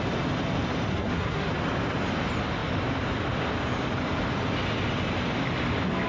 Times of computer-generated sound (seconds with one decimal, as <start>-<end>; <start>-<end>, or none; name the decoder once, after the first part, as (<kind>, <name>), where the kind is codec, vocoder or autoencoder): 0.9-1.5 (codec, SNAC)